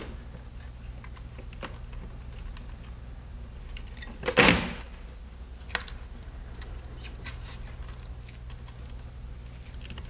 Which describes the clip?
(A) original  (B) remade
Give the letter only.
A